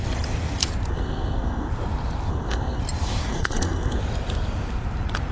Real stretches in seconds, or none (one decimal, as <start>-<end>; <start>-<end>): 0.0-0.9; 1.7-2.3; 2.8-3.3; 4.0-5.3